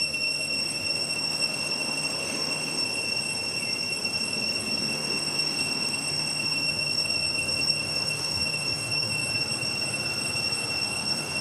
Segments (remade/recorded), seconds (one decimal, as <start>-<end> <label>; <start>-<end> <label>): 0.0-2.8 remade; 2.8-4.8 recorded; 4.8-9.2 remade; 9.2-11.0 recorded; 11.0-11.4 remade